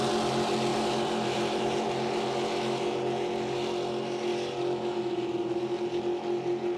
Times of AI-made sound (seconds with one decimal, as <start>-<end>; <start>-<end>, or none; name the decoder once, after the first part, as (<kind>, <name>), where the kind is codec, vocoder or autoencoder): 0.7-1.6 (vocoder, BigVGAN v2); 4.3-6.0